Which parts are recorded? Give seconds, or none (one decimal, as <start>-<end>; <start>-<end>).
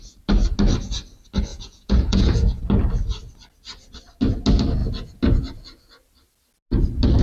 0.0-1.5; 2.6-7.2